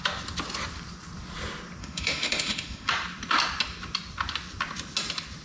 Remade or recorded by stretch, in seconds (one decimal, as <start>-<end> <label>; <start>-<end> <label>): 0.0-1.8 recorded; 1.8-2.9 remade; 2.9-5.4 recorded

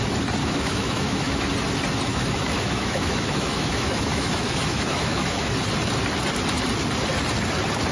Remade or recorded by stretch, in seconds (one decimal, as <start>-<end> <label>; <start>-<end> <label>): 0.0-0.4 recorded; 0.4-1.4 remade; 1.4-2.1 recorded; 2.1-5.5 remade; 5.5-7.9 recorded